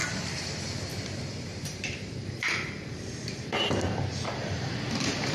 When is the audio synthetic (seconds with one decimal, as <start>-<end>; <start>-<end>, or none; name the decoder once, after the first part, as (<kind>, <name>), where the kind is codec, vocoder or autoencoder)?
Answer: 0.0-0.6 (vocoder, BigVGAN v2); 1.5-4.7